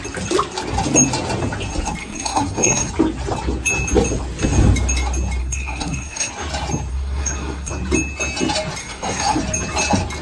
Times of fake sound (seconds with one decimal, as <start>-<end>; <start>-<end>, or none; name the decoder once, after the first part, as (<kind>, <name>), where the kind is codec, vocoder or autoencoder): 2.0-2.9 (codec, SNAC); 5.4-6.3; 6.9-7.7; 8.8-9.4

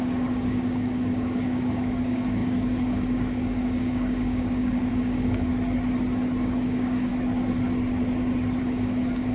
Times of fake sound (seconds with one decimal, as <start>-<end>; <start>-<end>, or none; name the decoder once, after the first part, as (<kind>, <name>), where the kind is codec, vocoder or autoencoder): 0.0-5.5 (codec, DAC); 6.4-7.1; 8.6-9.3

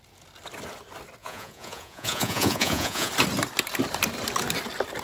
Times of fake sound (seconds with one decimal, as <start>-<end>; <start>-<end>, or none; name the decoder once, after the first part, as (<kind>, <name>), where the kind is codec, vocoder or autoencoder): 1.2-3.1 (vocoder, Vocos)

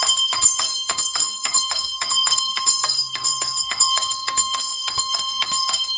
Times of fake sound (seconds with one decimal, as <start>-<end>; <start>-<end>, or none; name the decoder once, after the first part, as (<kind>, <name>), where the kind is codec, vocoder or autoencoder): 0.0-6.0 (codec, SNAC)

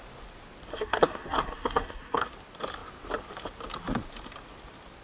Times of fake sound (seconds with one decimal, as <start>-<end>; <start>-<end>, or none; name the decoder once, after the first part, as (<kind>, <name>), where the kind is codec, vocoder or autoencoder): 0.7-2.3 (codec, SNAC)

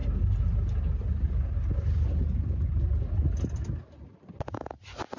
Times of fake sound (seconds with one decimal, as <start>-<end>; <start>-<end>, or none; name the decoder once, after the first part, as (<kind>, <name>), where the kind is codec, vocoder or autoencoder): none

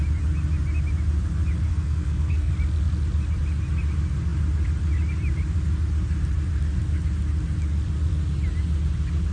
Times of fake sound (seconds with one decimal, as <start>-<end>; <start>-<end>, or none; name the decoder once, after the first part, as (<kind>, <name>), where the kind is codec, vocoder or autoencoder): 1.7-2.5 (codec, SNAC)